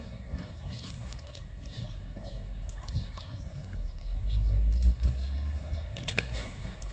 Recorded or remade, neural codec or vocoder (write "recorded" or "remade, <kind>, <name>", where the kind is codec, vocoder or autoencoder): remade, codec, SNAC